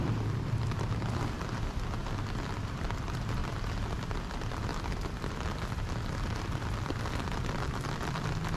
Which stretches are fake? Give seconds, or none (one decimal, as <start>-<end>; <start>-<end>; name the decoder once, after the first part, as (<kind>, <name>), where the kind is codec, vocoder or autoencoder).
0.0-2.0 (vocoder, BigVGAN v2); 2.6-3.4; 4.2-4.7; 6.6-8.6